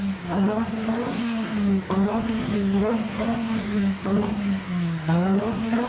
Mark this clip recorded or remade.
remade